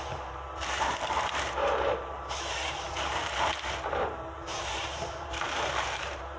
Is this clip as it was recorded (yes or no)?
no